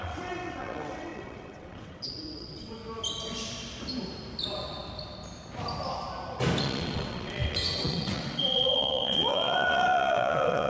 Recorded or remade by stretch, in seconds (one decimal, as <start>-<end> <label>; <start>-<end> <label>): 0.0-2.8 remade; 2.8-6.6 recorded; 6.6-10.7 remade